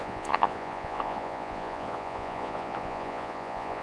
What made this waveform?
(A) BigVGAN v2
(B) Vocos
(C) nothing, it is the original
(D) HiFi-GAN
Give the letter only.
B